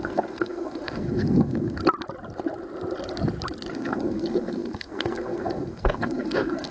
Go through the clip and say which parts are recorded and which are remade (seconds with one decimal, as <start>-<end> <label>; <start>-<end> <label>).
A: 0.0-1.8 remade; 1.8-3.7 recorded; 3.7-6.7 remade